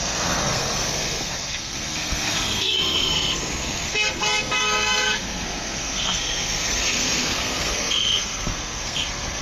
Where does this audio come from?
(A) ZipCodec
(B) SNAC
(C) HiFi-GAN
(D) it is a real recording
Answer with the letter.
B